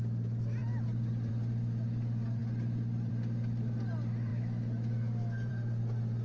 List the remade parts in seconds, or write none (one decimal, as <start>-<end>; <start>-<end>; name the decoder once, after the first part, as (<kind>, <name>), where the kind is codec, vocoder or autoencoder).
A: 4.3-5.5 (autoencoder, DAC-VAE)